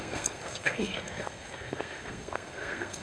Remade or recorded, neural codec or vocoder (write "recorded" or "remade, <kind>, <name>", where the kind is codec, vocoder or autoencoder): remade, codec, SNAC